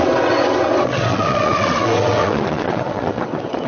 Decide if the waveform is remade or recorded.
remade